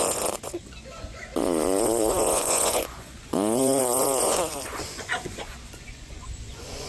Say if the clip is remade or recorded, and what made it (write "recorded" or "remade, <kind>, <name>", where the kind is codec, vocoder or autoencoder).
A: remade, vocoder, Vocos